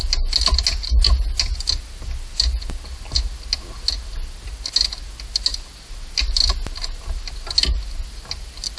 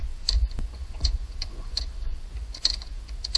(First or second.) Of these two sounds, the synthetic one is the second